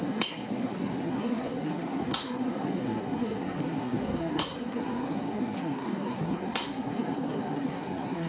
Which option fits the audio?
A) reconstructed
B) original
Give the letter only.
A